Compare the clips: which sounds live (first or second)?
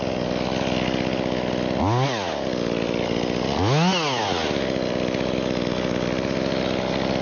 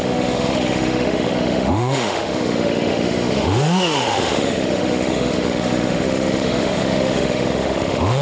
first